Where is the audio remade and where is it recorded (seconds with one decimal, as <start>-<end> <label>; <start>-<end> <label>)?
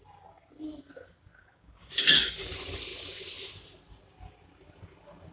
0.0-1.4 recorded; 1.4-2.5 remade; 2.5-5.3 recorded